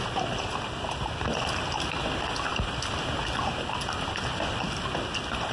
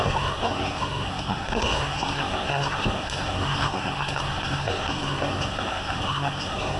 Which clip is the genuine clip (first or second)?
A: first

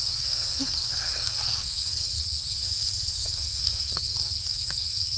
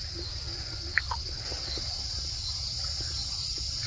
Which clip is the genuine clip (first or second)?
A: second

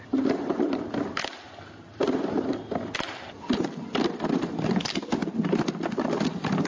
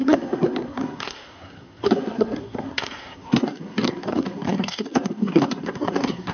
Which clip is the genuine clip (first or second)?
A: first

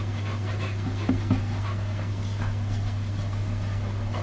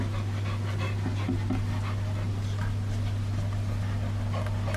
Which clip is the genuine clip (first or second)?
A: second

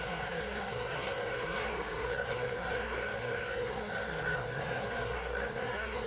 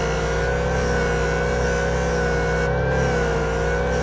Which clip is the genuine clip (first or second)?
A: second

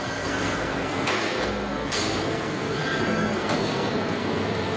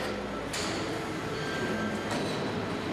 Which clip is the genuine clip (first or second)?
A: second